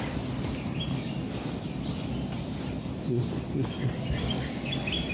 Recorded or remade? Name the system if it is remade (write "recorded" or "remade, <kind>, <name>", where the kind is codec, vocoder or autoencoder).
recorded